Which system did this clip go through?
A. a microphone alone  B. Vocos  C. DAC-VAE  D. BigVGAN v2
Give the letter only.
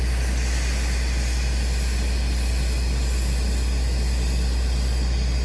A